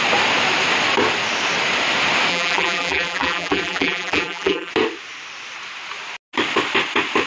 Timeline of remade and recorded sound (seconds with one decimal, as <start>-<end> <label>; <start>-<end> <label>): 0.0-2.3 recorded; 2.3-4.7 remade; 4.7-7.3 recorded